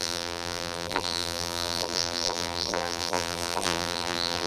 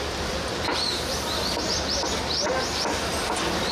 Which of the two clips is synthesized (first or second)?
first